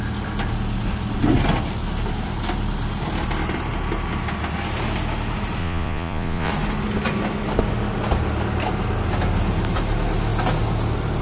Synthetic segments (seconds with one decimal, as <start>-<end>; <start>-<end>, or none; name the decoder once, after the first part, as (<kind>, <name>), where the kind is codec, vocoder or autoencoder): 5.6-6.5 (vocoder, Vocos)